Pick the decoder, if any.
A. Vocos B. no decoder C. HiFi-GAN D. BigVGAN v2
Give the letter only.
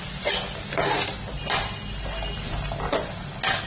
B